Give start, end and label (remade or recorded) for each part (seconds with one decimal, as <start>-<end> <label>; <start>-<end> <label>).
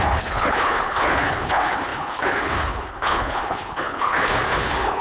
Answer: 0.0-5.0 remade